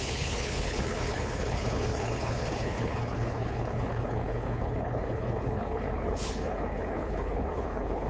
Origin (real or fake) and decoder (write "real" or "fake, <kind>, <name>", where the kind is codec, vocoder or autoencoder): fake, codec, HILCodec